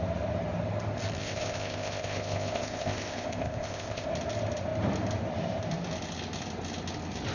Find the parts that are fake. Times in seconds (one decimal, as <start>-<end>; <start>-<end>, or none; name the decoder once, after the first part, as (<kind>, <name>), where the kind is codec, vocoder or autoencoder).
1.2-4.1 (codec, ZipCodec)